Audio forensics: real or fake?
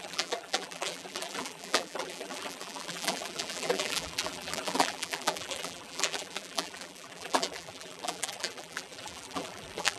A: fake